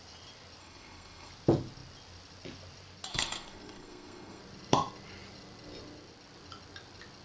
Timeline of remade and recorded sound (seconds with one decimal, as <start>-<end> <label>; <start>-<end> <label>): 0.0-0.6 recorded; 0.6-1.3 remade; 1.3-3.1 recorded; 3.1-4.4 remade; 4.4-7.2 recorded